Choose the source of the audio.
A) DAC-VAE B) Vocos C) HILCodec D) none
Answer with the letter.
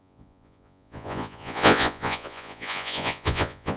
B